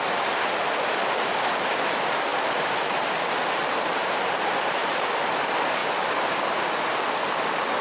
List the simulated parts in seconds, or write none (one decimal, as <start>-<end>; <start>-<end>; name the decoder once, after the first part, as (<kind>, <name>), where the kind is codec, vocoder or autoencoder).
2.3-3.0 (vocoder, BigVGAN v2); 4.0-5.1